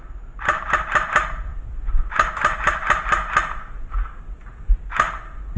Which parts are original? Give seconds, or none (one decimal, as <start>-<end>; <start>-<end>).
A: 0.0-5.6